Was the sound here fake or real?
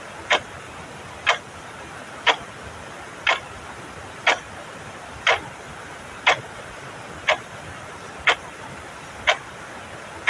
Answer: real